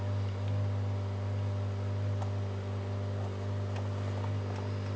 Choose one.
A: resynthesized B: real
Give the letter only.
B